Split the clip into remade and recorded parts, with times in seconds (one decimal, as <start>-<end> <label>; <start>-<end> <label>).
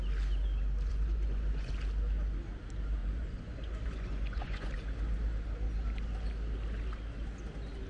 0.0-0.9 recorded; 0.9-1.7 remade; 1.7-3.0 recorded; 3.0-4.7 remade; 4.7-7.9 recorded